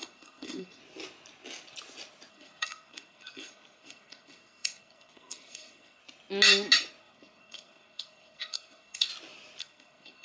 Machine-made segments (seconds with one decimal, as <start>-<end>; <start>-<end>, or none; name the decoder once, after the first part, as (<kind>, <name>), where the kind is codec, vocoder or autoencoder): 0.0-0.8 (codec, SNAC); 2.3-6.0; 7.0-9.1; 9.6-10.2